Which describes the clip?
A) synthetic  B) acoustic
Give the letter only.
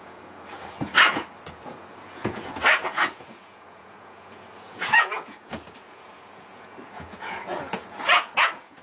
A